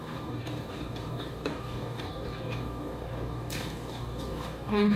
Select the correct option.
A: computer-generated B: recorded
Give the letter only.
A